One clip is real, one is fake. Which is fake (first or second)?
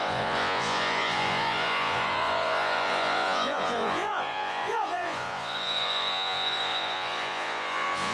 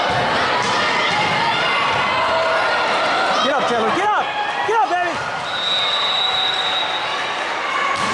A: first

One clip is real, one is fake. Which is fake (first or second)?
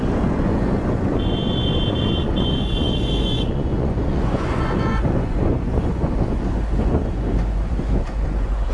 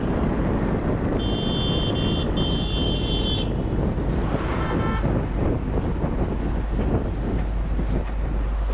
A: first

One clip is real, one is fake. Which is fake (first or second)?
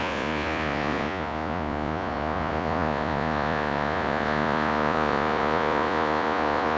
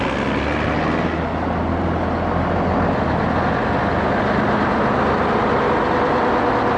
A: first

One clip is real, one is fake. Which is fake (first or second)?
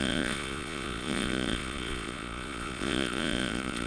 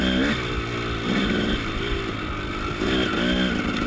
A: first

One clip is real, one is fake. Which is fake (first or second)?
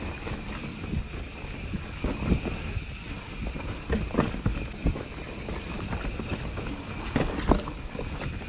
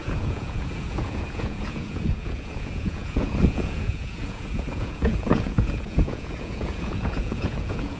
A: second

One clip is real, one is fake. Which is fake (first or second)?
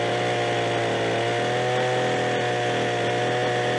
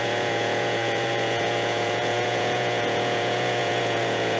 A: second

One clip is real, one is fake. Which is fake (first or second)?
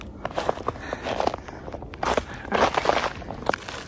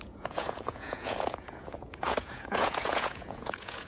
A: second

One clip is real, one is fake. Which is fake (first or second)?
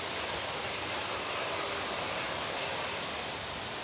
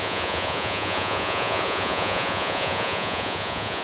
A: second